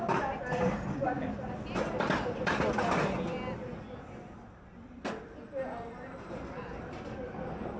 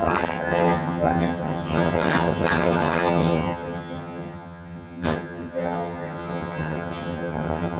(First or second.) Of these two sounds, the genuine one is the first